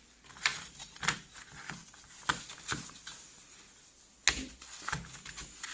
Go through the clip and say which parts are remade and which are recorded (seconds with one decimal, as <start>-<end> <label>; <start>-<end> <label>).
0.0-0.5 recorded; 0.5-1.4 remade; 1.4-1.8 recorded; 1.8-3.6 remade; 3.6-5.7 recorded